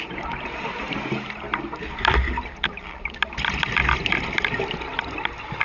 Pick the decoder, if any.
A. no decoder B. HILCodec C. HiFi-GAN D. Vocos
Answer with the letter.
A